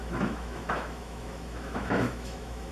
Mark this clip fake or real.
fake